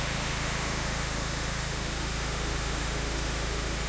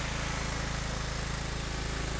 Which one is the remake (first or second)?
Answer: first